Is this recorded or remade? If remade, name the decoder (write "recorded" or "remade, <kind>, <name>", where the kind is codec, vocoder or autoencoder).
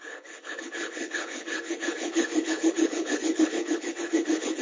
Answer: remade, codec, HILCodec